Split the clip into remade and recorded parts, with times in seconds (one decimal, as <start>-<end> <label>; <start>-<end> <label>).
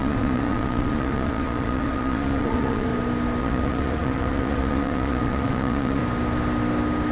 0.0-2.9 remade; 2.9-3.4 recorded; 3.4-6.0 remade; 6.0-7.1 recorded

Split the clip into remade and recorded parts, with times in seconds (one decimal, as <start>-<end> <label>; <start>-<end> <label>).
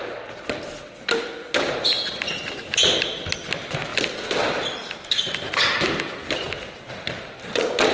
0.0-7.9 recorded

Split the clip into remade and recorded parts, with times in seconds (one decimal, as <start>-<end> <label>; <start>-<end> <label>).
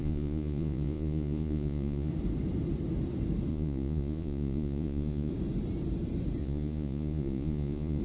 0.0-2.1 remade; 2.1-3.5 recorded; 3.5-5.3 remade; 5.3-6.4 recorded; 6.4-8.0 remade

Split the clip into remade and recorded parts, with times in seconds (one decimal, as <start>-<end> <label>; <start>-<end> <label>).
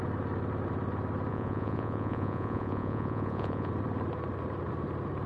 0.0-1.3 recorded; 1.3-3.7 remade; 3.7-5.3 recorded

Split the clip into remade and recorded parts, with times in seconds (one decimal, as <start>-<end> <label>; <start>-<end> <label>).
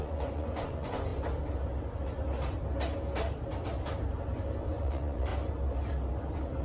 0.0-1.1 remade; 1.1-4.7 recorded; 4.7-5.3 remade; 5.3-6.6 recorded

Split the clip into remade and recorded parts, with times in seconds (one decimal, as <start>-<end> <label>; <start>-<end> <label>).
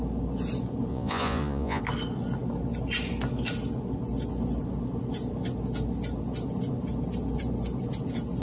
0.0-0.9 recorded; 0.9-1.8 remade; 1.8-8.4 recorded